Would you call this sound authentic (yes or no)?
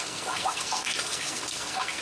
no